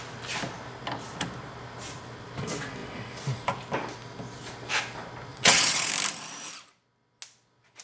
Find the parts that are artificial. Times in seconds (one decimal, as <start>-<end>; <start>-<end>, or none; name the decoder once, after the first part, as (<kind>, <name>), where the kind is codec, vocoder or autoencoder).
5.3-5.9 (vocoder, WaveNeXt)